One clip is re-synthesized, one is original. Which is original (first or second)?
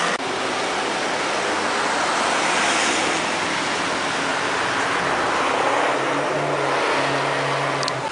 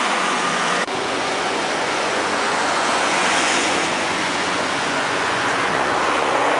first